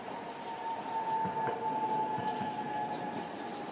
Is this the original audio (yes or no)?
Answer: yes